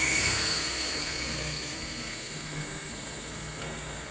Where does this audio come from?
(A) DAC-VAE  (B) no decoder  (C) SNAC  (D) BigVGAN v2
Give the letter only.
C